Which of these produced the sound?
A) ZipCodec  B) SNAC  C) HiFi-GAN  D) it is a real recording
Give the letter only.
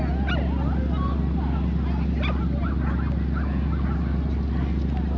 D